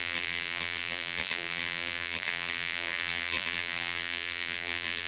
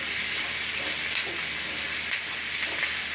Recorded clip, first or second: second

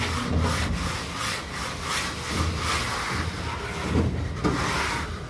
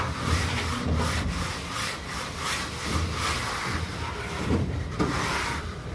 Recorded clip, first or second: first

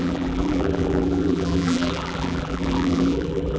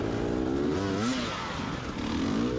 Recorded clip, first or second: second